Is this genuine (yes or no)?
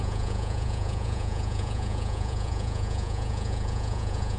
no